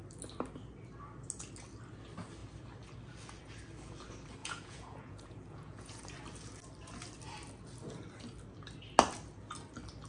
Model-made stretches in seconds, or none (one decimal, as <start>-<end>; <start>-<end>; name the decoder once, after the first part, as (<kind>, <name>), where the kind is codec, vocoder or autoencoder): 4.4-6.0 (vocoder, Vocos)